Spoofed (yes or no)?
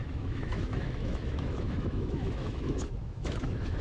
yes